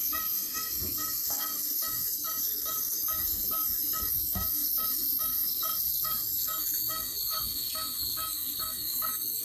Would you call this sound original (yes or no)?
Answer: no